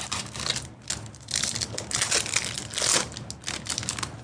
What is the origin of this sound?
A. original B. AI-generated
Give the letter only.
A